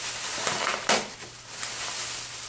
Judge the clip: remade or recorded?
recorded